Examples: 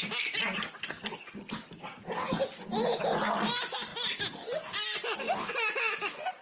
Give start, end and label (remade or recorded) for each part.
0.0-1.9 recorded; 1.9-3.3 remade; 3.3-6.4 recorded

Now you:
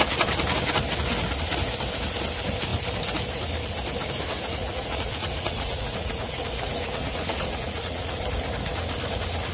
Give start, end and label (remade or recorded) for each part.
0.0-4.6 recorded; 4.6-8.2 remade; 8.2-9.5 recorded

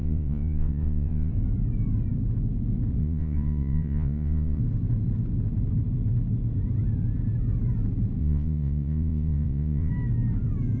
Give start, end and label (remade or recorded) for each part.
0.0-1.3 remade; 1.3-3.0 recorded; 3.0-4.6 remade; 4.6-8.2 recorded; 8.2-9.9 remade; 9.9-10.8 recorded